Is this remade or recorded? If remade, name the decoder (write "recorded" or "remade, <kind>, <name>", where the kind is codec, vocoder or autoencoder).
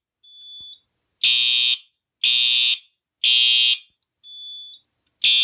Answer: recorded